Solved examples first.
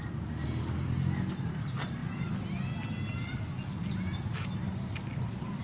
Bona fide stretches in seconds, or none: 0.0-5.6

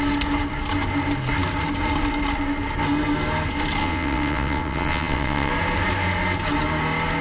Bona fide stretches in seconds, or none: 0.0-3.8; 5.5-7.2